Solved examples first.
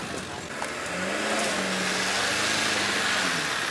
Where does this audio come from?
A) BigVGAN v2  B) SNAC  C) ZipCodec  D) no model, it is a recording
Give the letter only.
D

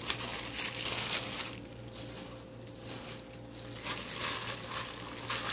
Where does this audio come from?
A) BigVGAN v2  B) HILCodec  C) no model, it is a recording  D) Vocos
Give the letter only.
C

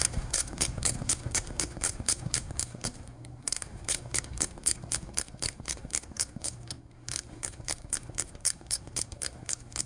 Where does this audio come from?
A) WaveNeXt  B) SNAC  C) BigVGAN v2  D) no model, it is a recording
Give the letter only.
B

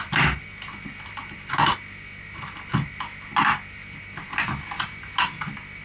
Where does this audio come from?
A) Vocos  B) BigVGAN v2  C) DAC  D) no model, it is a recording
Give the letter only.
D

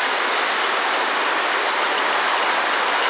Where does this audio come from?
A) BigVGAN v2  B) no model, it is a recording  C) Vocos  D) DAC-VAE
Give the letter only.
B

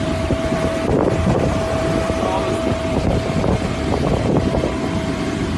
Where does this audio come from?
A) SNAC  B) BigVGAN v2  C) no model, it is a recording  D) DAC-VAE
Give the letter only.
B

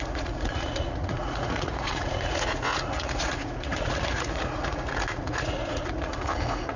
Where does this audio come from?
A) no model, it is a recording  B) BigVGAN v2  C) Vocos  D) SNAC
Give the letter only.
C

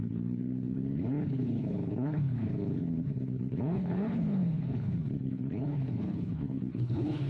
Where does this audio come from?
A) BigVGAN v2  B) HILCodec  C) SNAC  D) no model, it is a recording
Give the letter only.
B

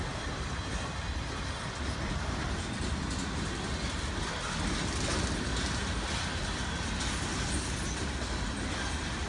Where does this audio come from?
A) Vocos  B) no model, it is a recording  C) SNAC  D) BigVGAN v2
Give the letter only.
B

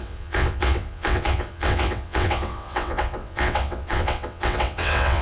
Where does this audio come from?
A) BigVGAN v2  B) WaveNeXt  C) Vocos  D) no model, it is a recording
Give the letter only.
B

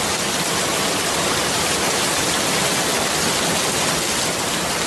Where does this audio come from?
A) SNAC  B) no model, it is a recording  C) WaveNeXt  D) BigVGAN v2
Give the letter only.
B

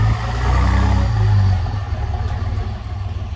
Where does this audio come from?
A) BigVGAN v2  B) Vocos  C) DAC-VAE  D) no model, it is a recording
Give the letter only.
D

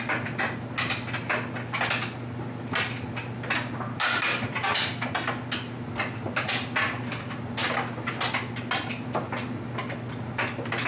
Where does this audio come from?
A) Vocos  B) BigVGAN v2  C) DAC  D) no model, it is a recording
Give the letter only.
D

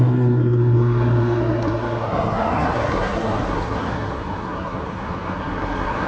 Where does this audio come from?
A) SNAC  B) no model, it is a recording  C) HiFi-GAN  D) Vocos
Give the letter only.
A